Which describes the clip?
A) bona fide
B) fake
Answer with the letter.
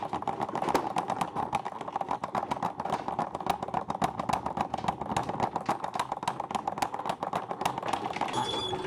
A